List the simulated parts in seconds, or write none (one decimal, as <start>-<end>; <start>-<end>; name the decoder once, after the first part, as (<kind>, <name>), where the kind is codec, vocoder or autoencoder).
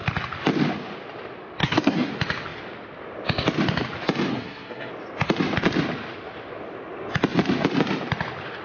1.6-2.1 (codec, SNAC); 4.3-4.9